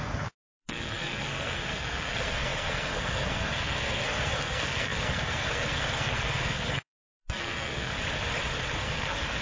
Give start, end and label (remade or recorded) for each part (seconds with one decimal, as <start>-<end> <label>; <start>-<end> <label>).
0.0-7.9 remade; 7.9-8.8 recorded; 8.8-9.4 remade

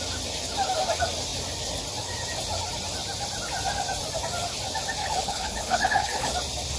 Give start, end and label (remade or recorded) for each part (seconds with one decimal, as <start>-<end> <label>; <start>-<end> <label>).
0.0-5.0 recorded; 5.0-6.3 remade; 6.3-6.8 recorded

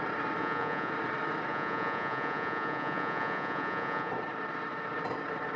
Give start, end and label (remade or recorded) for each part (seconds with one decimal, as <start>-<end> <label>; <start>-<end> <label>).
0.0-0.4 recorded; 0.4-0.9 remade; 0.9-1.5 recorded; 1.5-4.1 remade; 4.1-5.6 recorded